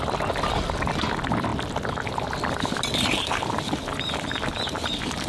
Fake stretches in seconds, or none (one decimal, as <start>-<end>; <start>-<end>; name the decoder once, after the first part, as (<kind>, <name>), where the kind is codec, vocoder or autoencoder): none